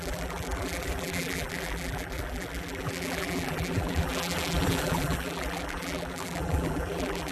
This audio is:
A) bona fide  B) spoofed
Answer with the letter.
B